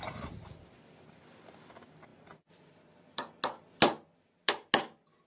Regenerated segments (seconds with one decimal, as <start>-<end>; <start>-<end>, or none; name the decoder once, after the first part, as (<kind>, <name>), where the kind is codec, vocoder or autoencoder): none